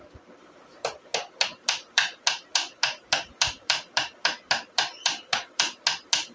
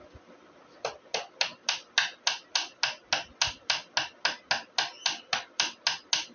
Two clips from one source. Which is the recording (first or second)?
second